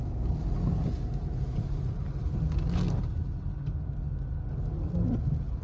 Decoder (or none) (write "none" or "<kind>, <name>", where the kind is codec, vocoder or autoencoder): none